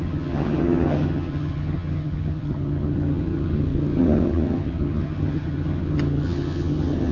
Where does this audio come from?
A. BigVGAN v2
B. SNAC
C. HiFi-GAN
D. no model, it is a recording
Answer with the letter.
C